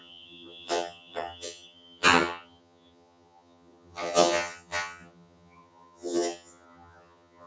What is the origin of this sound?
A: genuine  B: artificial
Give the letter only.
B